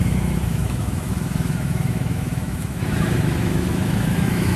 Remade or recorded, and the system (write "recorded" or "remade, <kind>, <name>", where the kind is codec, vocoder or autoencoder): remade, autoencoder, DAC-VAE